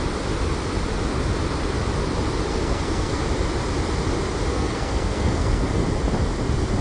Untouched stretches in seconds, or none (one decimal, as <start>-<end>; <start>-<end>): 0.0-2.5; 3.2-4.5; 5.8-6.8